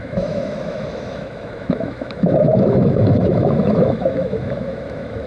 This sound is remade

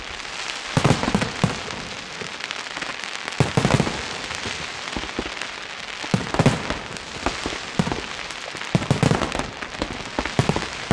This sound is recorded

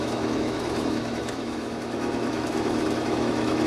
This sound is remade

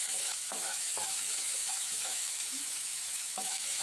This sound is remade